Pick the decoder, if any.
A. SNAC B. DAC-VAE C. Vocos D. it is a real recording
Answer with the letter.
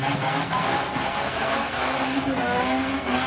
A